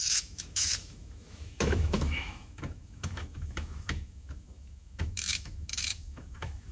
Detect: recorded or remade remade